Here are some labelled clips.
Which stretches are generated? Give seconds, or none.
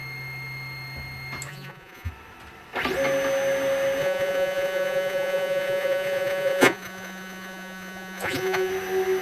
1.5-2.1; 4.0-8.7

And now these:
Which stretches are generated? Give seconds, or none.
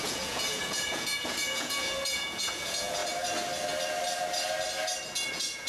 0.0-3.0; 5.3-5.7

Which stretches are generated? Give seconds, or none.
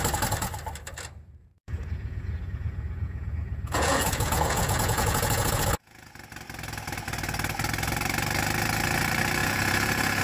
1.4-6.1; 9.4-10.2